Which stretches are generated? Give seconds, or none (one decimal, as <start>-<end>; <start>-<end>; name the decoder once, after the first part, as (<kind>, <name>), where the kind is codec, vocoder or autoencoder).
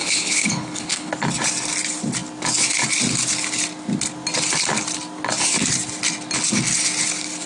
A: 0.0-1.1 (codec, HILCodec)